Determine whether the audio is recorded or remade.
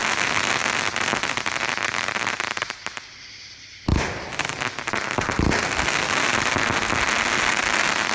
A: recorded